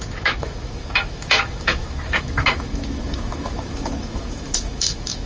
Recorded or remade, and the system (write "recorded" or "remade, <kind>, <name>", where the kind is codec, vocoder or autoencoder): remade, autoencoder, DAC-VAE